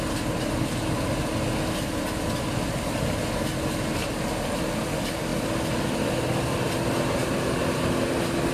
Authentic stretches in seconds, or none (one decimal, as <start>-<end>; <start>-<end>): 0.0-8.5